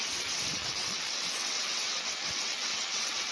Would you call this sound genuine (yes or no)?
no